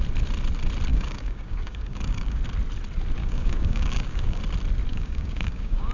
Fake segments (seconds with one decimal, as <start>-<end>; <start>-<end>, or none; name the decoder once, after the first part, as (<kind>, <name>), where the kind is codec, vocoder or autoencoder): 0.9-2.4 (codec, DAC); 3.2-4.4; 4.9-5.9